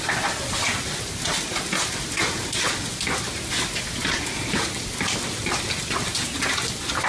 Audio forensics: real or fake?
real